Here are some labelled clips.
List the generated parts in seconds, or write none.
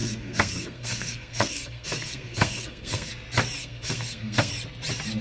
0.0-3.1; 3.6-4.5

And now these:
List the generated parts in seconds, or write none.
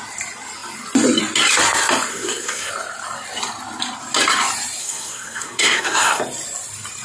2.1-2.7; 4.8-6.2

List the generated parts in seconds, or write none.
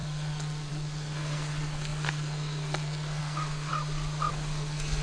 0.0-3.7; 4.3-5.0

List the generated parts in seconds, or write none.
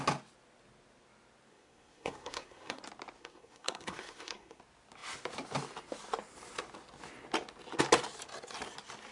1.5-2.8; 3.2-4.6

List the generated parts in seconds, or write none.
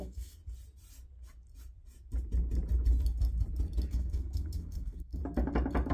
0.0-0.4; 3.9-5.2